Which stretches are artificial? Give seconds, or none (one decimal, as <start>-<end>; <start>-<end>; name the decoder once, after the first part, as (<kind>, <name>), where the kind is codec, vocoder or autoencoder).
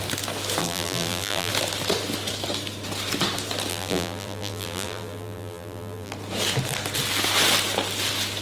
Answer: 0.6-1.5 (vocoder, BigVGAN v2); 3.7-6.1